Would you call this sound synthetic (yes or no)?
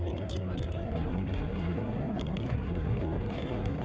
yes